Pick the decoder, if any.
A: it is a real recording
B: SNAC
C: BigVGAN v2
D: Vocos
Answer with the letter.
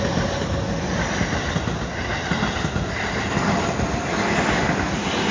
A